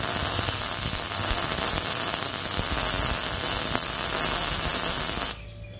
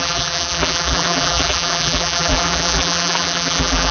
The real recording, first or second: first